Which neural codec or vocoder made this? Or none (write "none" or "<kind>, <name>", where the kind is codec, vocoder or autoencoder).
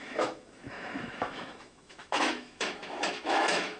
autoencoder, DAC-VAE